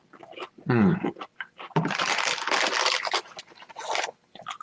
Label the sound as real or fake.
real